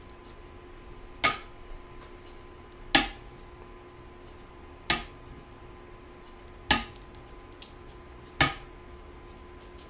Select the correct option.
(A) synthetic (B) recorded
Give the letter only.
B